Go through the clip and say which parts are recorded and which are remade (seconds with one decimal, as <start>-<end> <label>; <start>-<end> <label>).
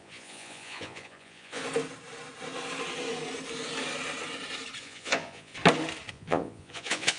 0.0-1.6 remade; 1.6-4.8 recorded; 4.8-5.5 remade; 5.5-6.1 recorded; 6.1-7.2 remade